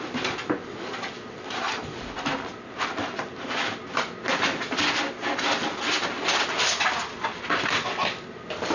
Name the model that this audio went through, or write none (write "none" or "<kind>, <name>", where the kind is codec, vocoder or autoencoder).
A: none